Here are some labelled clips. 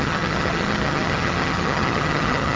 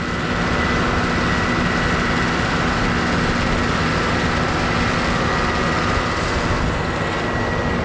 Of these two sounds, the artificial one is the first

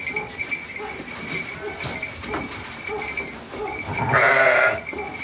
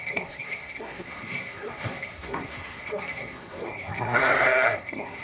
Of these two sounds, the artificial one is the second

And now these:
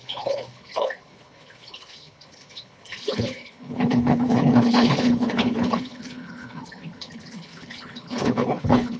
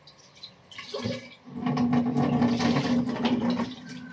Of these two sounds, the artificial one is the first